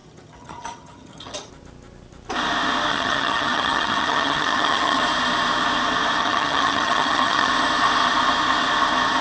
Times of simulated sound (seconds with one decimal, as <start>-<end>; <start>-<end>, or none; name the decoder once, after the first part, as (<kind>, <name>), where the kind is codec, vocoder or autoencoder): 0.0-1.5 (vocoder, HiFi-GAN); 2.9-5.0; 6.2-7.5